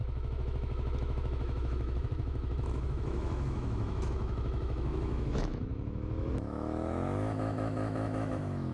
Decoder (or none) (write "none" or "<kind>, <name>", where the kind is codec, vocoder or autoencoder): autoencoder, DAC-VAE